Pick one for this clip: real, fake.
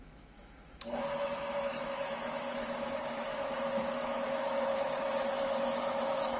fake